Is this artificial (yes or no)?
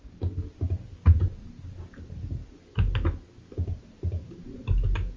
no